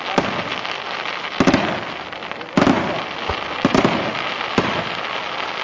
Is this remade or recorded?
recorded